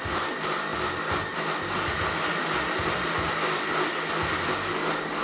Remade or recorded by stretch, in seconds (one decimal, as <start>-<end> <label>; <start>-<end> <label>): 0.0-5.2 recorded